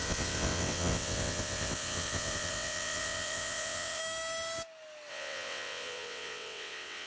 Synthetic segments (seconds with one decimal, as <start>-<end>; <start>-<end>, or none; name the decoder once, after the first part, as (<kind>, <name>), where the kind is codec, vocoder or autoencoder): 0.0-4.0 (vocoder, WaveNeXt); 5.1-7.1